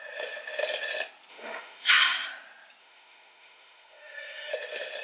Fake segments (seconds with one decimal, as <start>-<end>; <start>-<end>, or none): 1.3-1.9; 2.8-4.5

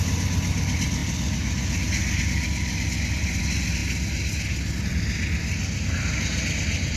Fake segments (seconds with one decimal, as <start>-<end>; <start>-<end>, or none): none

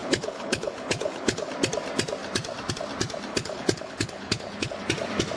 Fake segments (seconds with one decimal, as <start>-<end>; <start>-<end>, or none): 0.0-1.5; 3.3-4.7

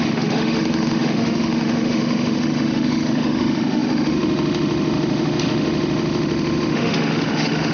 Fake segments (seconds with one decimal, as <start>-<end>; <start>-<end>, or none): 0.0-7.7